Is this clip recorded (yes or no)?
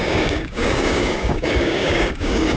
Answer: no